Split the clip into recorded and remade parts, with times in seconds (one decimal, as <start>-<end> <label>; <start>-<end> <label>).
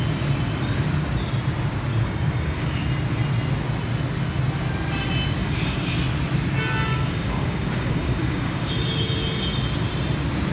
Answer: 0.0-1.9 recorded; 1.9-2.9 remade; 2.9-5.4 recorded; 5.4-6.0 remade; 6.0-6.9 recorded; 6.9-8.7 remade; 8.7-10.5 recorded